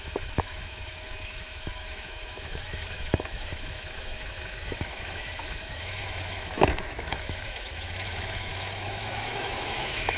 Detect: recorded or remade remade